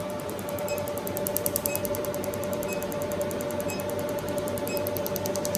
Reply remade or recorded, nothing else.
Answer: recorded